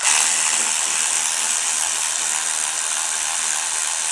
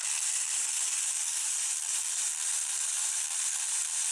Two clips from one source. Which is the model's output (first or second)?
second